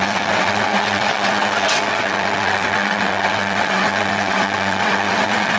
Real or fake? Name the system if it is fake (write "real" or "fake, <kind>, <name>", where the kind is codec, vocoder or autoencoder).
fake, vocoder, WaveNeXt